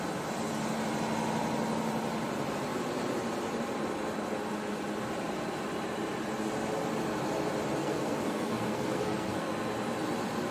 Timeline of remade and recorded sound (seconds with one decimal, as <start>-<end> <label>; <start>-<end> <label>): 0.0-7.8 recorded; 7.8-9.5 remade; 9.5-10.5 recorded